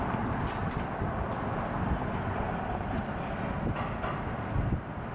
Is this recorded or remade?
recorded